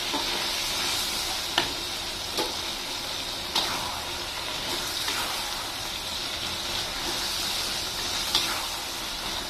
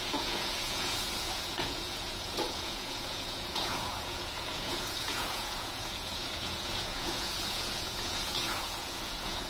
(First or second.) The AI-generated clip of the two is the second